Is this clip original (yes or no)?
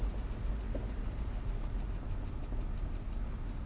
yes